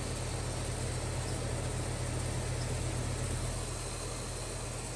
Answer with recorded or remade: recorded